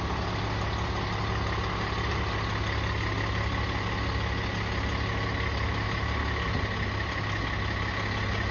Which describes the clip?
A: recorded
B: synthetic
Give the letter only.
A